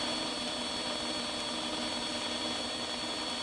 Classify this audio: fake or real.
real